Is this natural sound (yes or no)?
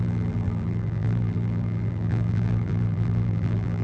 no